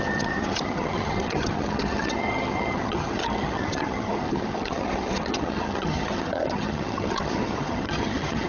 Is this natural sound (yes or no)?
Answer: no